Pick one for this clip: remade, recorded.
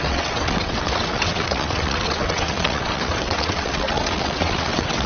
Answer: remade